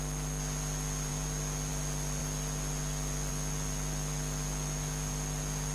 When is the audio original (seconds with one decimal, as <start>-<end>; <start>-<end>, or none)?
0.0-5.7